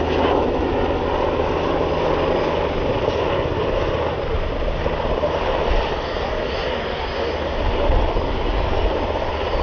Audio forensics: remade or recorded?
recorded